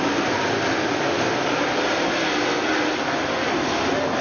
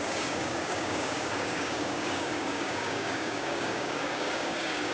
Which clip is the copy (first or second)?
second